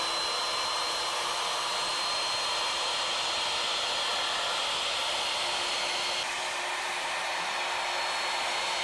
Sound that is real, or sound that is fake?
real